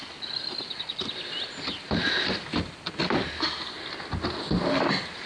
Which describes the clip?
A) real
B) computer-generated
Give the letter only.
A